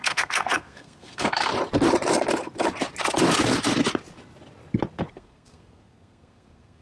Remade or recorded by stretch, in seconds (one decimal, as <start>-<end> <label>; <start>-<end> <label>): 0.0-1.5 remade; 1.5-5.1 recorded; 5.1-6.8 remade